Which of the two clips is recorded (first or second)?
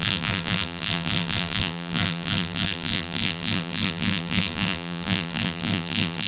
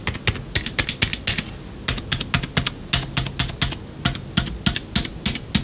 second